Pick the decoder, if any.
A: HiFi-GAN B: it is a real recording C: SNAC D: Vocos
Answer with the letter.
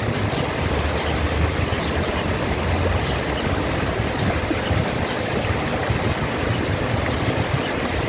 B